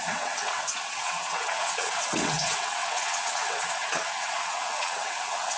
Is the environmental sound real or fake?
fake